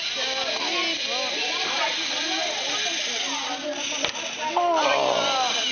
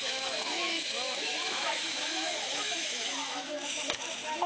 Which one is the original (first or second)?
first